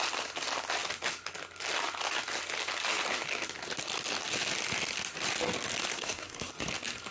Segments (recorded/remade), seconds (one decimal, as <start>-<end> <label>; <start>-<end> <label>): 0.0-5.9 recorded; 5.9-6.5 remade; 6.5-7.1 recorded